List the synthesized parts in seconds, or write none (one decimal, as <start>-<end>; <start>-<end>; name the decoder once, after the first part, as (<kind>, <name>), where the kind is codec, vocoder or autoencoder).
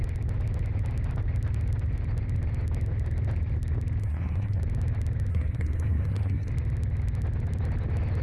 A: 4.0-4.6 (codec, SNAC); 5.3-6.5